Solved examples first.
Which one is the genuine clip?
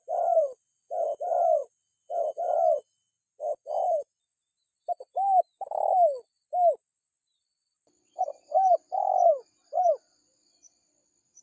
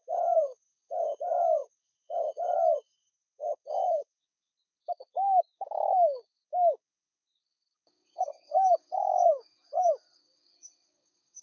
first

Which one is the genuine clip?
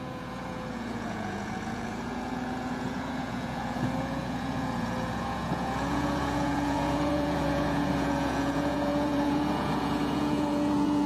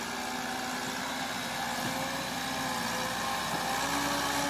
second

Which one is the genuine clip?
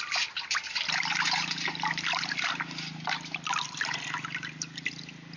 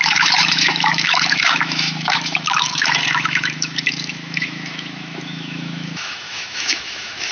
first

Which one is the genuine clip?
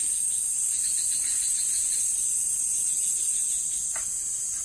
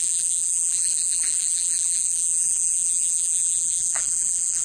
first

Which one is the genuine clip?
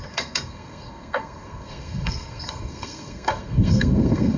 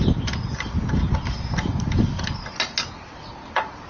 second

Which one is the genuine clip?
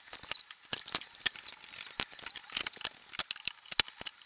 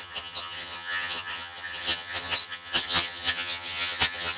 first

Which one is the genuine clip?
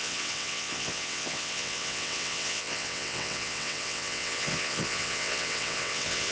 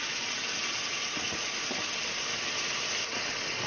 second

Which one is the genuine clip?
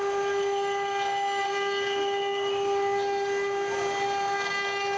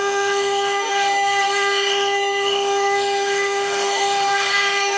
first